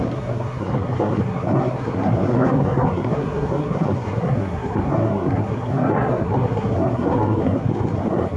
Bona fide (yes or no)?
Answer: no